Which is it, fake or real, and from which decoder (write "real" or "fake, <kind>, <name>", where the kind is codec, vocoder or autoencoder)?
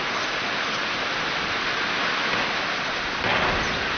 real